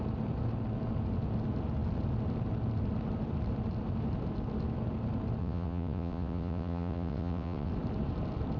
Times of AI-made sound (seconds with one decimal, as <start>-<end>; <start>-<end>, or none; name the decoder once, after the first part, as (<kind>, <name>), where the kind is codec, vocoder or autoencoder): 5.4-7.7 (vocoder, WaveNeXt)